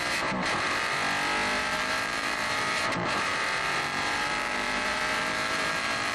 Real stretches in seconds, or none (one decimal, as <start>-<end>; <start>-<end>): 1.0-1.6